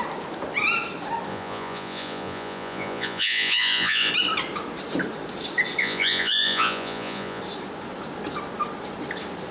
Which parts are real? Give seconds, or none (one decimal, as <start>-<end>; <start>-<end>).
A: 0.0-1.3; 4.1-5.8; 7.4-9.5